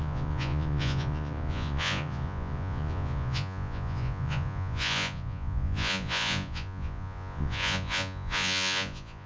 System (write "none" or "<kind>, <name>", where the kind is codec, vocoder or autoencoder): vocoder, Vocos